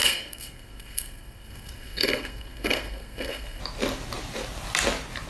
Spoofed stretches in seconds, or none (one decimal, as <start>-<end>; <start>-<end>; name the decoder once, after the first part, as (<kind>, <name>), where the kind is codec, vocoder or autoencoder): 0.0-3.6 (codec, SNAC)